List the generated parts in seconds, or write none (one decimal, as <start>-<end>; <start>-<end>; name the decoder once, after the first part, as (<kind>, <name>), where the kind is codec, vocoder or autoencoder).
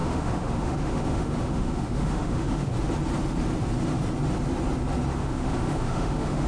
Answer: 0.0-2.7 (autoencoder, DAC-VAE); 5.2-6.5